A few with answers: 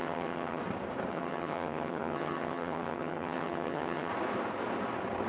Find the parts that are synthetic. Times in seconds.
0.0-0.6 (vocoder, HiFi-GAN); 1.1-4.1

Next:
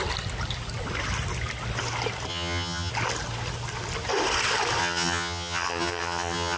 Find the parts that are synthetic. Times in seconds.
2.3-2.9 (vocoder, HiFi-GAN); 4.8-6.6

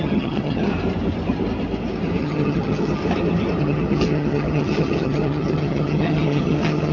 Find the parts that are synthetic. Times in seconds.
0.0-0.7 (vocoder, HiFi-GAN); 2.2-3.0; 3.6-6.9

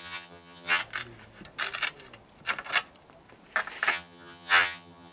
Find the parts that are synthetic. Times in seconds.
0.0-0.8 (vocoder, HiFi-GAN); 3.9-5.1

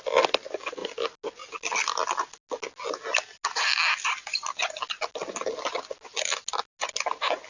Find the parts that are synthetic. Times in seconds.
none

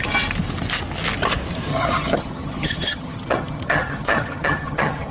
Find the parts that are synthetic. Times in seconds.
1.7-5.1 (vocoder, HiFi-GAN)

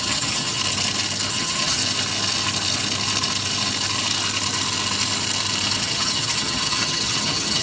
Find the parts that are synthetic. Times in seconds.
0.0-0.6 (vocoder, HiFi-GAN); 1.3-1.8; 5.8-7.6

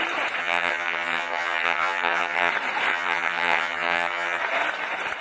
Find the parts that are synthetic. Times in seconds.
0.4-2.5 (vocoder, HiFi-GAN); 2.9-4.4